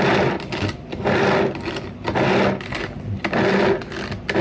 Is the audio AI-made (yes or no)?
no